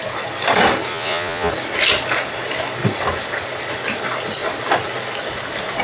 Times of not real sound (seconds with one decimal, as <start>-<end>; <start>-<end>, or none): 0.9-1.5